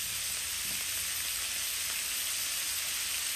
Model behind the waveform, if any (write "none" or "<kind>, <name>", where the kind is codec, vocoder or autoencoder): none